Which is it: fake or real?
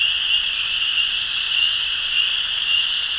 real